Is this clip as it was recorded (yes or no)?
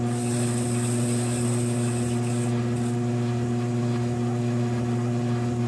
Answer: yes